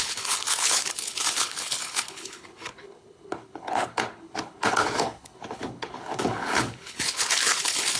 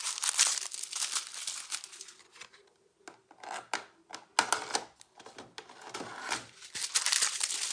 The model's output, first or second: first